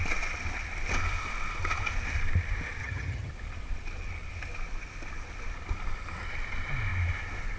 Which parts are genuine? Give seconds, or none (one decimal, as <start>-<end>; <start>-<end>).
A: 0.0-2.8; 3.3-7.6